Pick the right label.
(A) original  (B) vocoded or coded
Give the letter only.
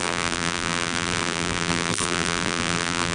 B